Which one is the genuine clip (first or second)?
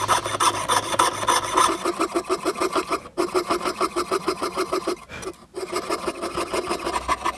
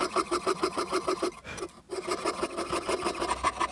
first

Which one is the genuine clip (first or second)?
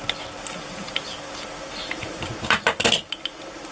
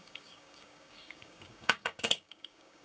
first